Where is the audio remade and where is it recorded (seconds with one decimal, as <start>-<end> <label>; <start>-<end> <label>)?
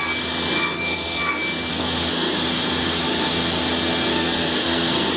0.0-1.7 recorded; 1.7-2.3 remade; 2.3-4.1 recorded; 4.1-5.2 remade